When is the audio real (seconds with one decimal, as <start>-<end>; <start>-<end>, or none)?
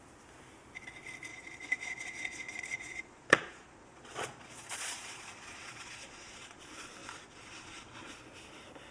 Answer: 0.0-1.3; 6.6-7.0; 8.1-8.9